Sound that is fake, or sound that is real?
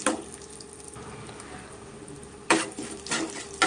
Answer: fake